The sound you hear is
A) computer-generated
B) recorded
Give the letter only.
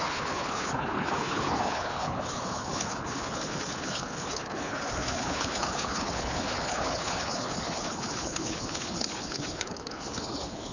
A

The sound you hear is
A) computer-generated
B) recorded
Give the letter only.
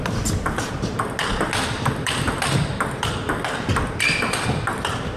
B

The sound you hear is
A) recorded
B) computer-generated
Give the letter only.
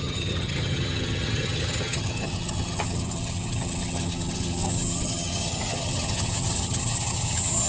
B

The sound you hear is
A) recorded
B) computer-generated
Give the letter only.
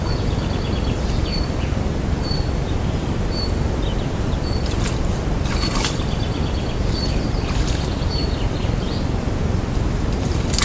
A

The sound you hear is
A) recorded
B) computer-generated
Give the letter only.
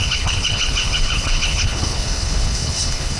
B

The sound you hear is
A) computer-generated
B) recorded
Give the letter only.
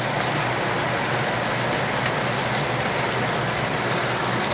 B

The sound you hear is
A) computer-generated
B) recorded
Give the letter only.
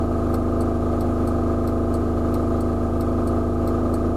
B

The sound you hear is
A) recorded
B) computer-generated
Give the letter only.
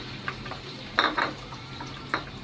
B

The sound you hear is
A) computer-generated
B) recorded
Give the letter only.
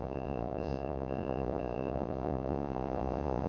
A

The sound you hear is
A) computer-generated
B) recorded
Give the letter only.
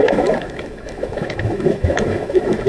A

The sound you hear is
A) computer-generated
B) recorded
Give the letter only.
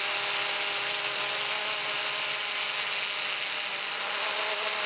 B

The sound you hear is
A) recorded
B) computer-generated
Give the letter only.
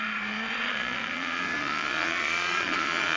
B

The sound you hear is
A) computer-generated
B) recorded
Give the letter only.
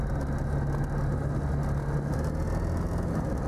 B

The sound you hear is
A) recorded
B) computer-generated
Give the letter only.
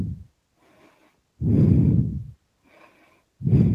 A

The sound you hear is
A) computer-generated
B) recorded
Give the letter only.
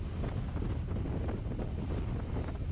B